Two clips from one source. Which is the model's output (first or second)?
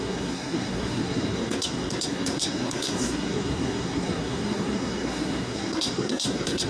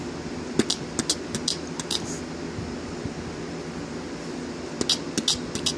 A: first